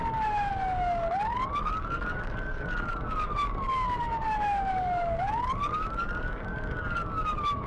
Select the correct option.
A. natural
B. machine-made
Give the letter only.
B